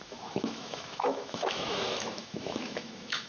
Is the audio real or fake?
fake